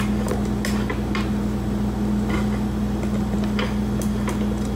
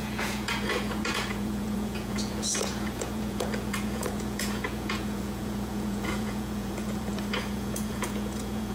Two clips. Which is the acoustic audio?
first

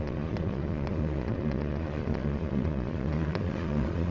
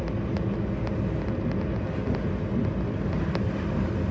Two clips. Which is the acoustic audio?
second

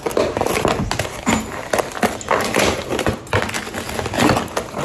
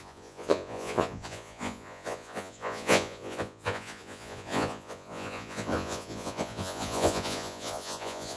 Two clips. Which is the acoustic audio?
first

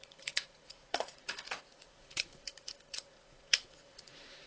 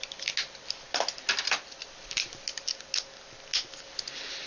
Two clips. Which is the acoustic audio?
second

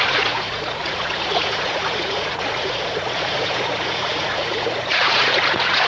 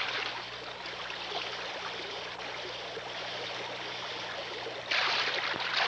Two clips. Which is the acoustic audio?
second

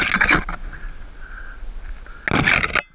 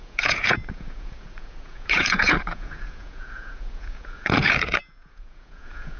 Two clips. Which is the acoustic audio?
first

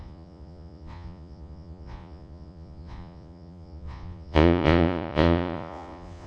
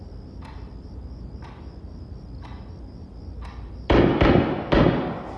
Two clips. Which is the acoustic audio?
second